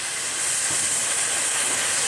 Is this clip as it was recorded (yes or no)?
yes